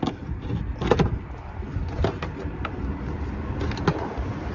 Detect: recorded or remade remade